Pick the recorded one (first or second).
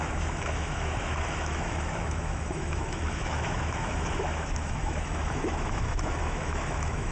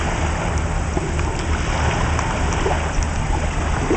second